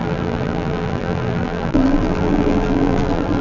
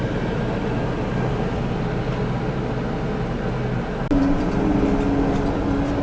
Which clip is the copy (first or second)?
first